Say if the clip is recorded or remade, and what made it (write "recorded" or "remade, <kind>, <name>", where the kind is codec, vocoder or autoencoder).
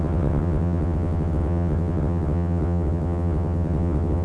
remade, vocoder, WaveNeXt